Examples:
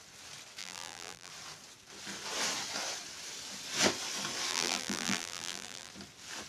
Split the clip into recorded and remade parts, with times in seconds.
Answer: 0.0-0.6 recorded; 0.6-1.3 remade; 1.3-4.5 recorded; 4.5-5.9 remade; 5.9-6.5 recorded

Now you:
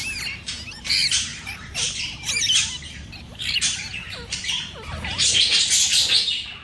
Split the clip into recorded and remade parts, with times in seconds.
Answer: 0.0-1.3 recorded; 1.3-5.3 remade; 5.3-6.6 recorded

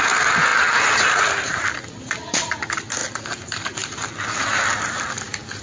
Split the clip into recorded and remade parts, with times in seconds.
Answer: 0.0-5.6 recorded